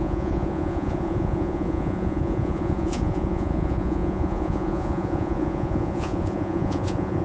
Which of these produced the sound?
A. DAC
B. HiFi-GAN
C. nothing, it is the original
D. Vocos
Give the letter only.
D